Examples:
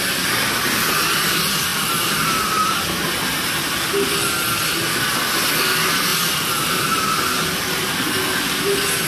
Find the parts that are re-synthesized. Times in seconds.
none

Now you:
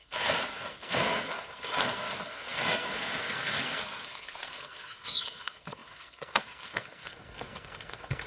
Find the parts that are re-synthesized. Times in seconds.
0.0-8.3 (codec, SNAC)